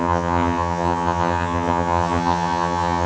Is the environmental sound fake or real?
fake